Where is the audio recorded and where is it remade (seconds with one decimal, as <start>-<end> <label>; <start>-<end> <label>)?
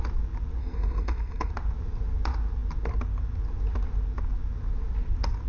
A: 0.0-0.6 recorded; 0.6-1.5 remade; 1.5-5.5 recorded